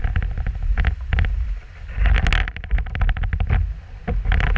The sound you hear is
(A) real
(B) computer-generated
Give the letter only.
A